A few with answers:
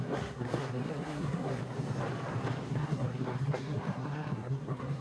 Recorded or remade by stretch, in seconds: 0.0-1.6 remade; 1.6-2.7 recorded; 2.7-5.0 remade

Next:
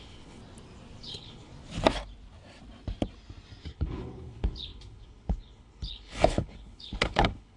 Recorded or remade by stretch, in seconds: 0.0-0.4 remade; 0.4-1.0 recorded; 1.0-1.5 remade; 1.5-3.6 recorded; 3.6-7.6 remade

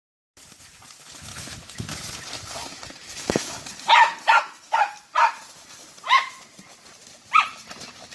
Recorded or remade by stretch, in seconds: 0.0-1.3 recorded; 1.3-1.9 remade; 1.9-3.0 recorded; 3.0-3.5 remade; 3.5-4.0 recorded; 4.0-4.9 remade; 4.9-8.1 recorded

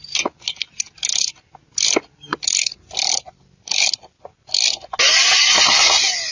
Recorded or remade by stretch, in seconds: 0.0-6.3 recorded

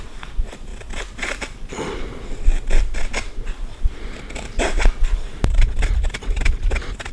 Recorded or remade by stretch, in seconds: 0.0-2.5 remade; 2.5-3.3 recorded; 3.3-7.1 remade

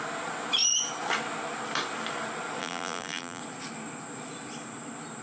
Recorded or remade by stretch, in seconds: 0.0-2.6 recorded; 2.6-3.4 remade; 3.4-5.2 recorded